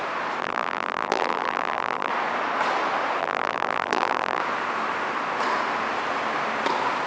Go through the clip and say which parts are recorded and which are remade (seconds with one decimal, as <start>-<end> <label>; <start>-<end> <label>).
0.0-0.4 recorded; 0.4-2.1 remade; 2.1-3.2 recorded; 3.2-4.4 remade; 4.4-7.1 recorded

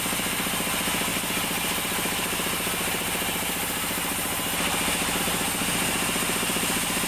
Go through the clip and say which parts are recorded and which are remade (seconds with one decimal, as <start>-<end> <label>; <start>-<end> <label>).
0.0-7.1 recorded

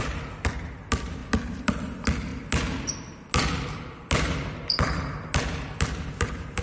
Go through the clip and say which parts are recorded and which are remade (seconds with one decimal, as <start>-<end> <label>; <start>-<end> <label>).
0.0-6.6 recorded

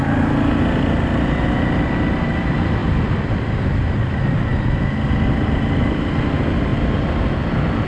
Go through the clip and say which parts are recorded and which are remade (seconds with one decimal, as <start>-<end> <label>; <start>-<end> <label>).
0.0-2.8 recorded; 2.8-3.4 remade; 3.4-7.9 recorded